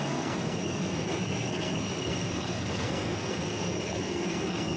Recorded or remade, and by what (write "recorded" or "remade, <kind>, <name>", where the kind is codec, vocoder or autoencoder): remade, codec, SNAC